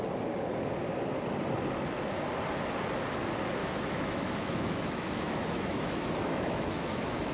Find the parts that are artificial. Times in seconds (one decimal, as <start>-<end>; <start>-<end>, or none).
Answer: 3.6-7.3